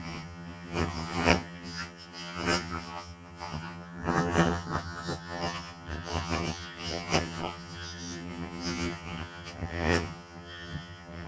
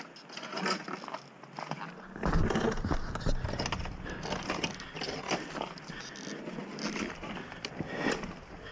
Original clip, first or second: second